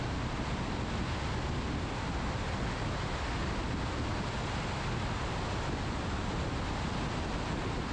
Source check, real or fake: real